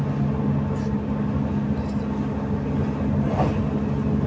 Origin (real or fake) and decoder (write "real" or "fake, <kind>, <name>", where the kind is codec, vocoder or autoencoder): real